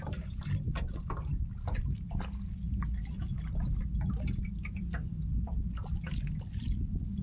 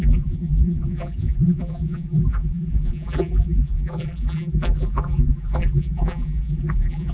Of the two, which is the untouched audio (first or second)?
first